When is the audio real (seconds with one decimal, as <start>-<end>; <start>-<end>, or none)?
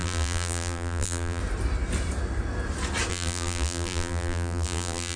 1.4-3.1